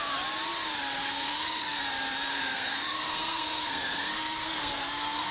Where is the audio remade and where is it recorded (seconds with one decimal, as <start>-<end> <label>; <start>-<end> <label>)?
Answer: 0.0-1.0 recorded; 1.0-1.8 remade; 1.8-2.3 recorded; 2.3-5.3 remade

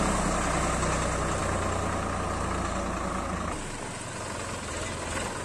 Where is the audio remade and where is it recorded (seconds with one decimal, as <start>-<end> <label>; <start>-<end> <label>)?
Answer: 0.0-5.4 recorded

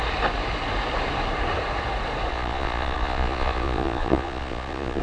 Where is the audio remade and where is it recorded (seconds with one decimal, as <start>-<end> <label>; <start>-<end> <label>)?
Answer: 0.0-2.3 recorded; 2.3-5.0 remade

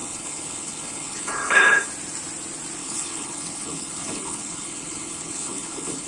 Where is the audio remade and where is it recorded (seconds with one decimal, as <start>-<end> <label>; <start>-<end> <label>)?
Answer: 0.0-1.9 remade; 1.9-2.8 recorded; 2.8-6.1 remade

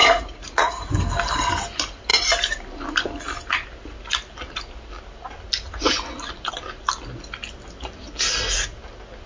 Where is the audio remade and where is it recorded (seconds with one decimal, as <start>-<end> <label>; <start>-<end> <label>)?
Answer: 0.0-0.9 remade; 0.9-9.3 recorded

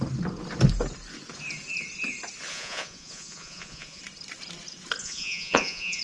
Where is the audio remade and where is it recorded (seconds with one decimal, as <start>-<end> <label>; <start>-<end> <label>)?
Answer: 0.0-2.5 recorded; 2.5-4.0 remade; 4.0-5.0 recorded; 5.0-6.0 remade